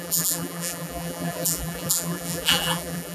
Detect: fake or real fake